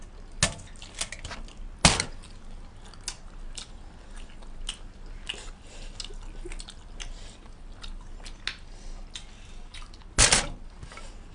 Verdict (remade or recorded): recorded